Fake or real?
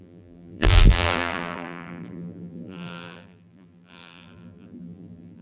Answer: fake